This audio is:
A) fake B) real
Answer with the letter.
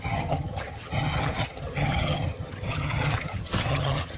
A